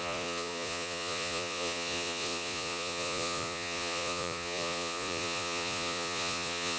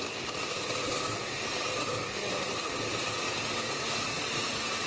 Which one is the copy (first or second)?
first